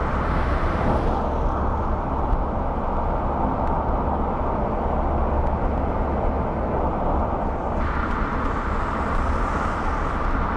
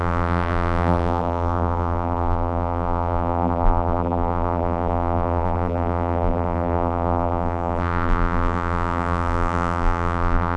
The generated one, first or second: second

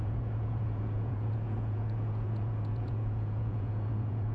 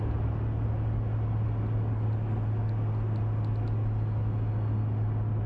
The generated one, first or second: first